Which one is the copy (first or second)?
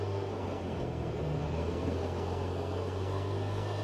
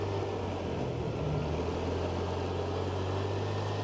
first